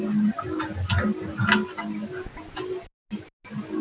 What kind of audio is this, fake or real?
real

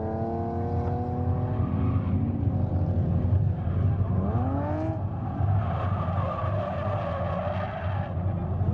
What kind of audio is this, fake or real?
real